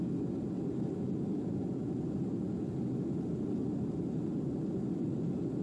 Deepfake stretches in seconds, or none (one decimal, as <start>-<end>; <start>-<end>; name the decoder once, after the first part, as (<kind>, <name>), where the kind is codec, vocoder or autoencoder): 3.6-5.6 (vocoder, BigVGAN v2)